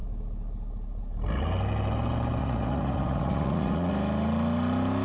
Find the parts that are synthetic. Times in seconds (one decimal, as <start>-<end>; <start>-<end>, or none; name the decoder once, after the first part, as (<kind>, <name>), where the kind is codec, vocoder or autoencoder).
2.4-3.9 (vocoder, Vocos)